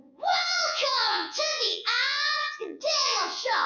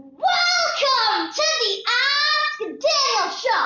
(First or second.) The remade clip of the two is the first